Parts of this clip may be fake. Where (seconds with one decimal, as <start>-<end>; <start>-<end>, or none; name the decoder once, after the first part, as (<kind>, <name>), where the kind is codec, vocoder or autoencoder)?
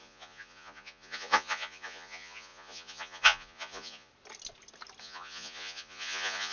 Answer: 0.0-4.1 (vocoder, Vocos); 5.0-6.5